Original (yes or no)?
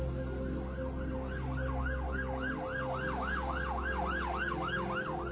yes